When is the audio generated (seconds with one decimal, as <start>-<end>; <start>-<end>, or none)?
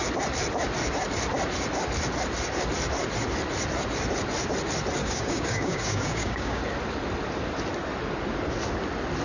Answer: 5.0-6.6